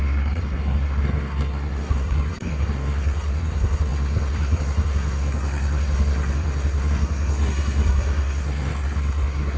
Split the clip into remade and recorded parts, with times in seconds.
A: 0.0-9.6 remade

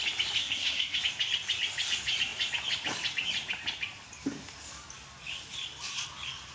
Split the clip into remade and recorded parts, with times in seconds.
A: 0.0-0.4 recorded; 0.4-1.0 remade; 1.0-6.5 recorded